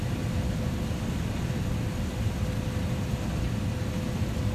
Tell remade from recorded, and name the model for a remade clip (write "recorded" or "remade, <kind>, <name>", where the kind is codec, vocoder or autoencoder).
recorded